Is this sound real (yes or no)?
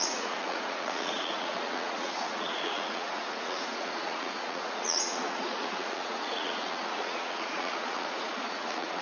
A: no